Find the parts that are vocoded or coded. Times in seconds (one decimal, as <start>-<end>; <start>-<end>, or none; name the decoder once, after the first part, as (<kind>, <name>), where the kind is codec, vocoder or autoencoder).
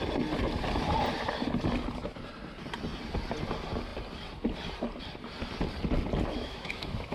6.3-7.1 (autoencoder, DAC-VAE)